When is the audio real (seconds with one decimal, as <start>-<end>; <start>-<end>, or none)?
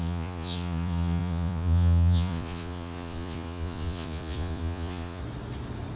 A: 5.2-6.0